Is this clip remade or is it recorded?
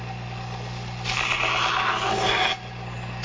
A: recorded